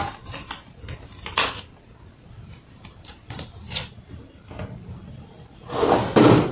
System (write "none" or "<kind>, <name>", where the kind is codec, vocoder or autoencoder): none